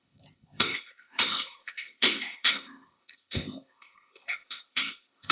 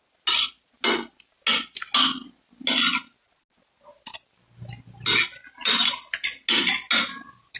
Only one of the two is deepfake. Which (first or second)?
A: first